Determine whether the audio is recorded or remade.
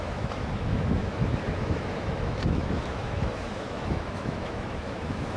remade